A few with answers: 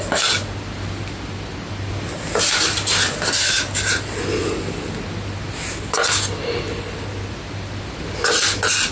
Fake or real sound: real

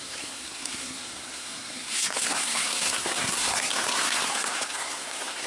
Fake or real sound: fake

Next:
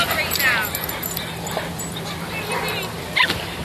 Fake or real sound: real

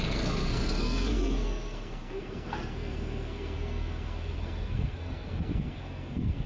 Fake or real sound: fake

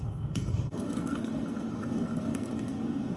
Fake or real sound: fake